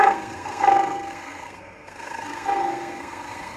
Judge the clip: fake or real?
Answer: fake